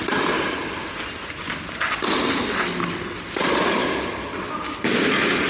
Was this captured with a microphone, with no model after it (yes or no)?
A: yes